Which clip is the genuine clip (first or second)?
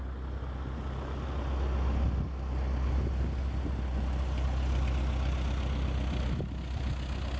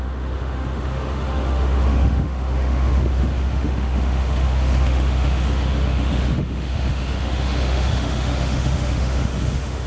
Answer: first